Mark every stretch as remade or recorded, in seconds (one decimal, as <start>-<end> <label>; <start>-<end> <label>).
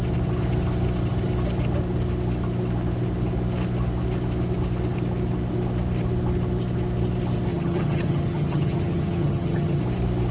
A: 0.0-7.5 recorded; 7.5-9.8 remade; 9.8-10.3 recorded